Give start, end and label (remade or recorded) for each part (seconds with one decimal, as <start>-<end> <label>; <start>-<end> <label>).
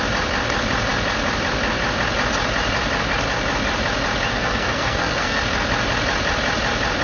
0.0-4.3 recorded; 4.3-5.4 remade; 5.4-7.0 recorded